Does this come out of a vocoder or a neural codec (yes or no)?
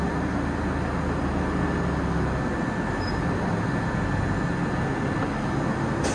no